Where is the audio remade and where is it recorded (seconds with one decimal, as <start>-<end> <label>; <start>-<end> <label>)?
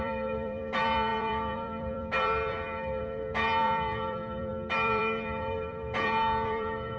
0.0-7.0 remade